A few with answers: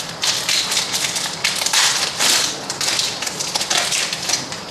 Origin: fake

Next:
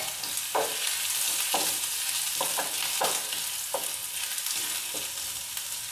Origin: real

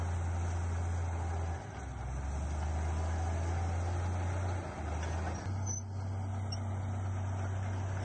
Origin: real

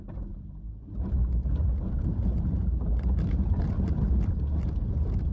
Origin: fake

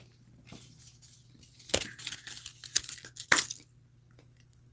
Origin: real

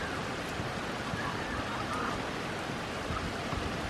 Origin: fake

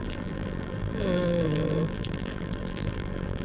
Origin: fake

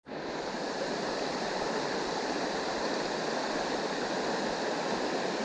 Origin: fake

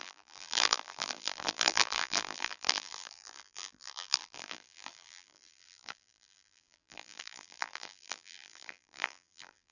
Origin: fake